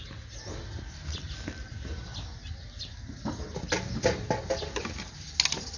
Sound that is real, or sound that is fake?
real